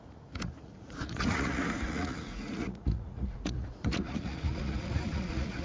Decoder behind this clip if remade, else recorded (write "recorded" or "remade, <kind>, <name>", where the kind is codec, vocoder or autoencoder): remade, vocoder, Vocos